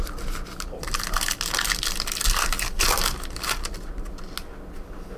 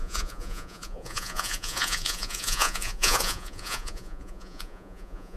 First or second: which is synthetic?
second